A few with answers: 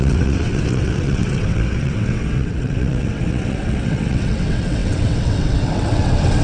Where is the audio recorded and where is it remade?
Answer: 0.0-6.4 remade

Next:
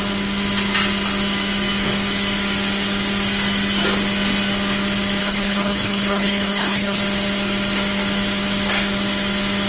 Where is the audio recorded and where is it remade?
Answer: 0.0-5.2 recorded; 5.2-7.0 remade; 7.0-9.7 recorded